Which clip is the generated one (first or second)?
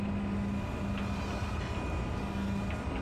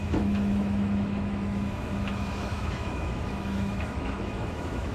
second